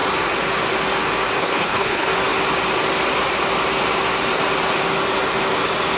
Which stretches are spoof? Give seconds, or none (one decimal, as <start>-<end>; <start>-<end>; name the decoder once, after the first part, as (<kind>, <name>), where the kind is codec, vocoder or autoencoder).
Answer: 1.4-2.1 (codec, HILCodec)